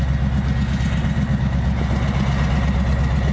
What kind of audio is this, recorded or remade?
recorded